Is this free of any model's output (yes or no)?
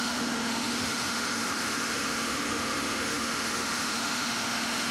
no